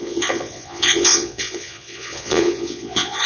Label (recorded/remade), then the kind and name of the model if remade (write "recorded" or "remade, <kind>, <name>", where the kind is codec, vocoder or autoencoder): remade, vocoder, Vocos